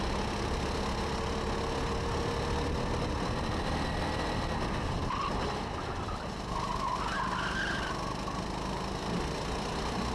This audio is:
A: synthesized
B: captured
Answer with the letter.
B